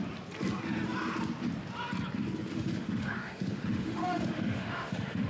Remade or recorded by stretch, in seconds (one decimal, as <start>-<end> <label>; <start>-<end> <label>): 0.0-2.5 recorded; 2.5-5.3 remade